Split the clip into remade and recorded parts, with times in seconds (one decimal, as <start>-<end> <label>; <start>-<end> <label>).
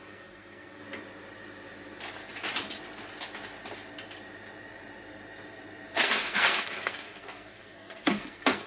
0.0-0.8 remade; 0.8-6.0 recorded; 6.0-8.7 remade